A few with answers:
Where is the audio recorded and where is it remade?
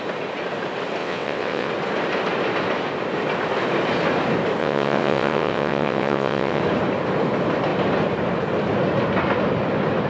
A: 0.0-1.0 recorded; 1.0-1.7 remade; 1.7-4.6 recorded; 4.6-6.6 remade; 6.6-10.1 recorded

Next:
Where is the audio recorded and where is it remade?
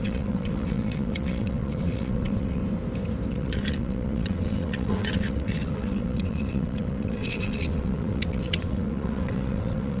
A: 0.0-2.6 remade; 2.6-3.3 recorded; 3.3-10.0 remade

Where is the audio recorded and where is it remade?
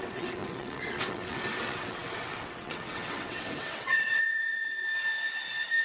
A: 0.0-4.9 remade; 4.9-5.8 recorded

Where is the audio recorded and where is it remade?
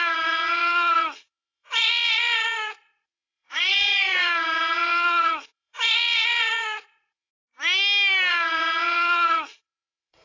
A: 0.0-7.3 remade; 7.3-8.3 recorded; 8.3-10.2 remade